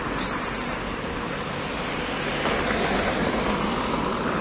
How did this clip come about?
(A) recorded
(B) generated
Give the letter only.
A